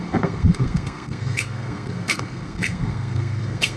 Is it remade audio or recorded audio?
remade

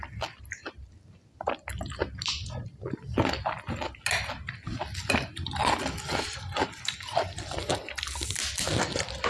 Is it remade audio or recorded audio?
recorded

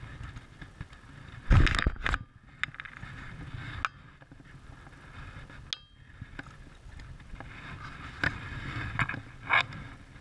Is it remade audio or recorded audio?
recorded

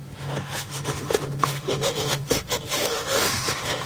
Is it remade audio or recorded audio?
remade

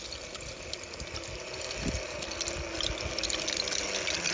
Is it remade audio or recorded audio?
recorded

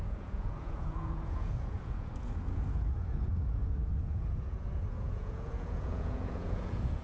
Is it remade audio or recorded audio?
remade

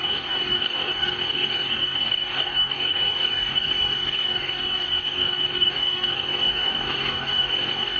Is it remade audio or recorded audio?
remade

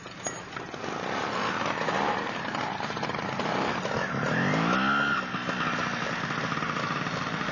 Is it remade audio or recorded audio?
recorded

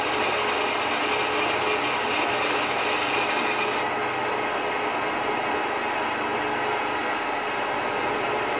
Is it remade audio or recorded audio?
recorded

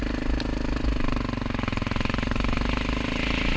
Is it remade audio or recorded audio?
recorded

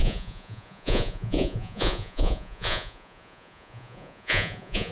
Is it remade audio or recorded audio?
remade